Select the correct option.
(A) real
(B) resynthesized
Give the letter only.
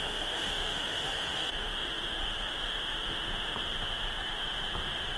B